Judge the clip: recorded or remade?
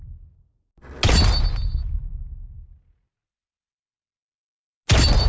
recorded